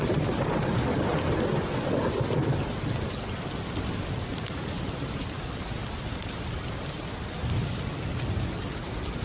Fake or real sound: real